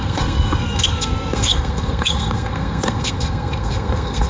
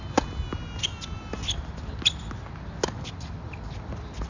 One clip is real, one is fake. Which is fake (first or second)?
first